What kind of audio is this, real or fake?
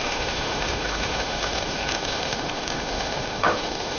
fake